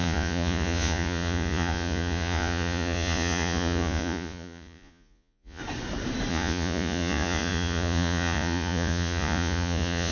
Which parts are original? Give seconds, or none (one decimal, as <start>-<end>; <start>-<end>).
5.6-6.3